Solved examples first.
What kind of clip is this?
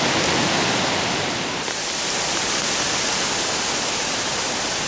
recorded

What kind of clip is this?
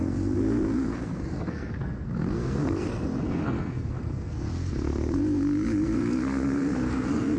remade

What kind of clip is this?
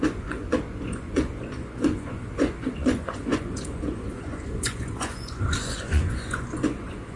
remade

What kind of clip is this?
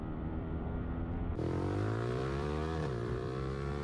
remade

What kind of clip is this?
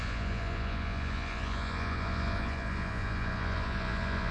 remade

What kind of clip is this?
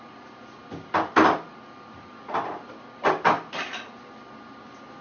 recorded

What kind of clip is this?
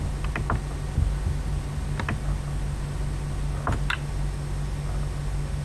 recorded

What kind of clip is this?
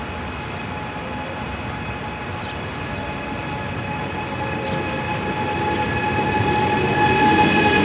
recorded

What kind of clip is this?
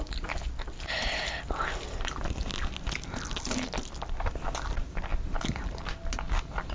recorded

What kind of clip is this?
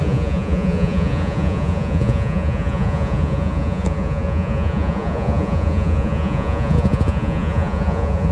remade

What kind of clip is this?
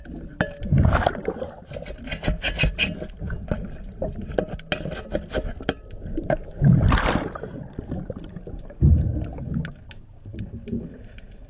recorded